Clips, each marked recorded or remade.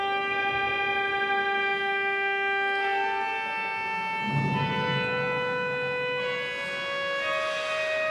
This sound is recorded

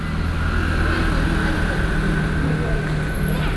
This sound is recorded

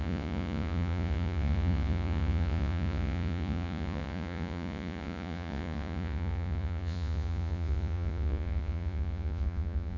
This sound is remade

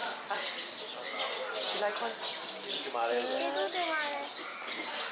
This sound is recorded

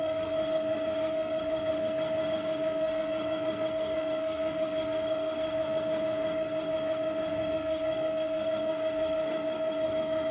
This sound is remade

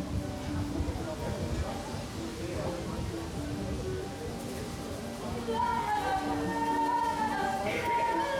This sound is recorded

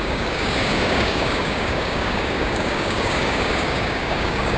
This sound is remade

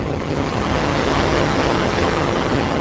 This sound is remade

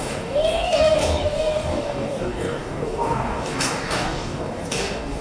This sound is remade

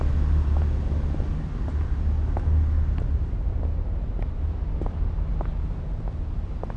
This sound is recorded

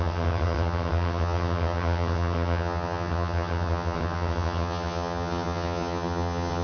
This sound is remade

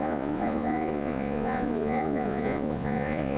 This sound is remade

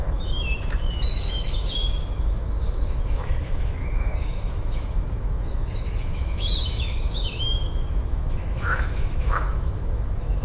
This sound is remade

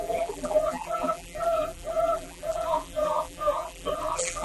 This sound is remade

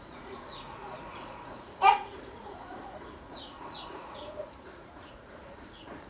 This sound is remade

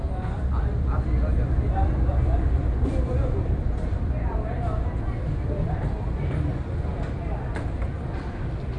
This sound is recorded